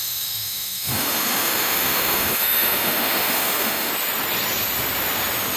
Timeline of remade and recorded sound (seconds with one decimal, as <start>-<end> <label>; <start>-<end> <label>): 0.0-3.9 remade; 3.9-5.6 recorded